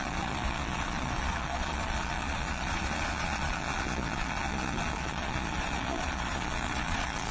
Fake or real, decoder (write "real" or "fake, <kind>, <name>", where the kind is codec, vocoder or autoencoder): fake, vocoder, Vocos